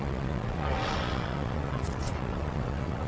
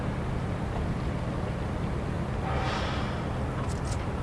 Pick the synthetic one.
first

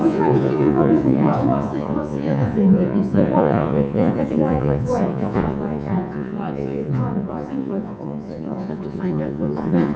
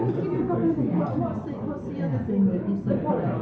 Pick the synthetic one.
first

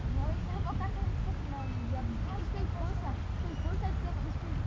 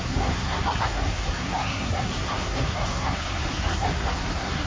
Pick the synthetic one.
second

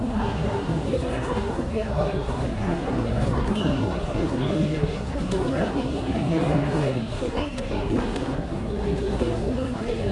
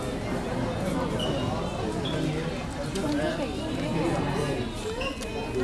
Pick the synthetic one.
first